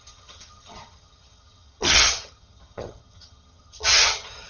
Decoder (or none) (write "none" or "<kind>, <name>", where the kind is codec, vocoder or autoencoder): vocoder, HiFi-GAN